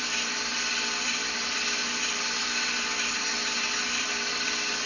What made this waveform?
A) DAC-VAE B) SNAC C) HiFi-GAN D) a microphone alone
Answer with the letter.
D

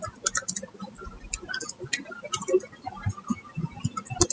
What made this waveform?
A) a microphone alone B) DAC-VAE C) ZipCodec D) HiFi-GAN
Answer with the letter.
A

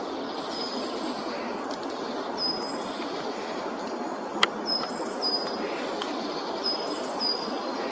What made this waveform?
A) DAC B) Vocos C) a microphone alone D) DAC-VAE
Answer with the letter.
C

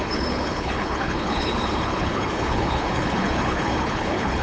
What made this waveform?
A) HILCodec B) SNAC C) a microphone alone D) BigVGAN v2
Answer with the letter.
A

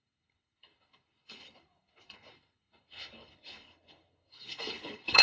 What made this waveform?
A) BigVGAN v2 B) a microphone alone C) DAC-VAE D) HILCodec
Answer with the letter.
D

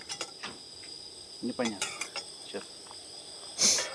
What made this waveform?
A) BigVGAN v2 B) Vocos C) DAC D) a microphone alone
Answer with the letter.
D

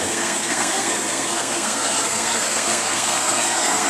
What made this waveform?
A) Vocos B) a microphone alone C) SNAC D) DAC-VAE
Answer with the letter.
C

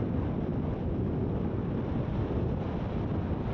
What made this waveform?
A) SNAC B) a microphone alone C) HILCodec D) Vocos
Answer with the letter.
B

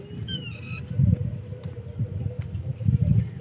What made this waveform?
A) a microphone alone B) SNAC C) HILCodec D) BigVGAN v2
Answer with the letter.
D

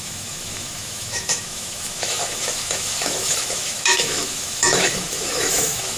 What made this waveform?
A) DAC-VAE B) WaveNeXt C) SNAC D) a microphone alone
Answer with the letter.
A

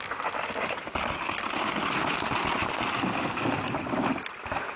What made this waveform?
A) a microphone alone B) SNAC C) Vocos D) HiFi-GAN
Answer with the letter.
A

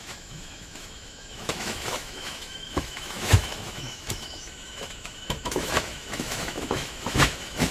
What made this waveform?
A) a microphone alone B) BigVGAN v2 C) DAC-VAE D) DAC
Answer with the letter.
C